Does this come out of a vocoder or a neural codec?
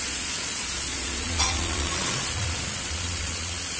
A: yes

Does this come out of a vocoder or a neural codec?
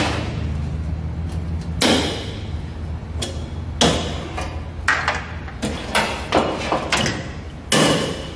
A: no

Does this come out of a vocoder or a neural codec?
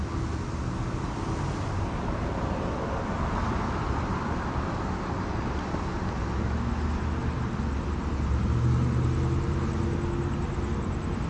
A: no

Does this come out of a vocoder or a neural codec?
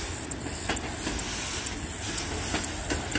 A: no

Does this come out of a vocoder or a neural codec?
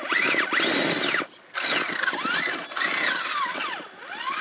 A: no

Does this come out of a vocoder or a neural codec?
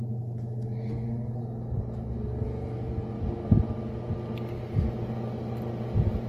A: no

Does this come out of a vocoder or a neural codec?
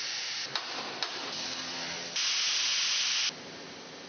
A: no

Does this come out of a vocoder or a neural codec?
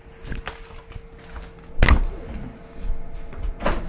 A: no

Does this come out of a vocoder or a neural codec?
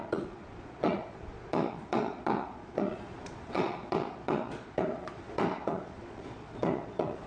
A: yes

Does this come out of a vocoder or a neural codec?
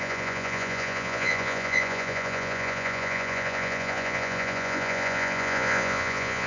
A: yes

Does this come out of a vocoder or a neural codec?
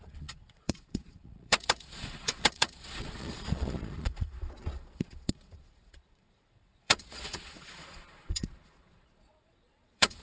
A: yes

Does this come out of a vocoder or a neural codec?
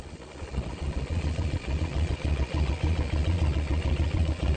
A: yes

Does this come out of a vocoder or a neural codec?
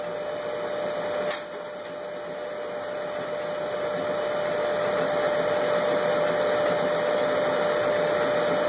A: no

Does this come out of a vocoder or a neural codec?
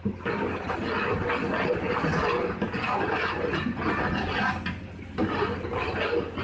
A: no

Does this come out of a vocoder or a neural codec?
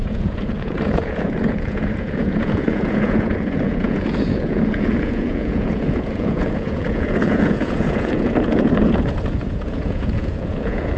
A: yes